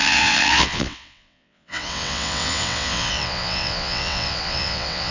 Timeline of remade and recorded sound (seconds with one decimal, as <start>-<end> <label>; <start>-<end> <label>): 0.0-5.1 remade